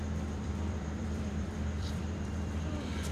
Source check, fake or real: fake